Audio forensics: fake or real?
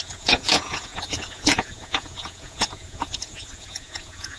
fake